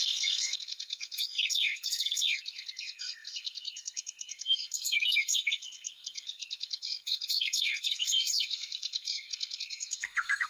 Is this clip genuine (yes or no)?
no